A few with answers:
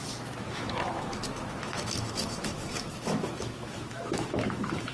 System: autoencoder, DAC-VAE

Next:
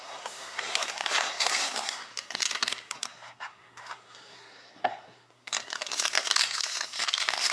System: codec, SNAC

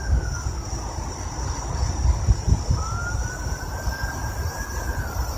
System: none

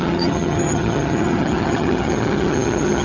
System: vocoder, HiFi-GAN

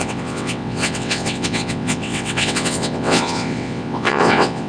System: vocoder, WaveNeXt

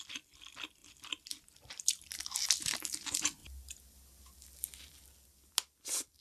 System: none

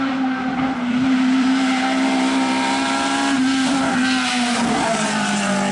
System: vocoder, BigVGAN v2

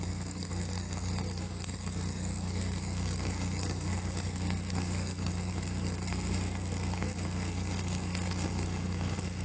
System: codec, SNAC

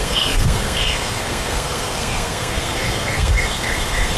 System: codec, SNAC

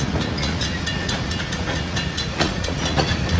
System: vocoder, Vocos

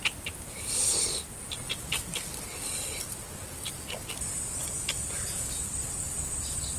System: none